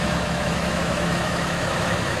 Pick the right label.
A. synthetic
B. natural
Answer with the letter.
A